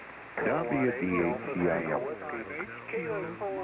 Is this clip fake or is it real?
real